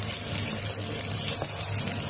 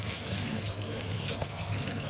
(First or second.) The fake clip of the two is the second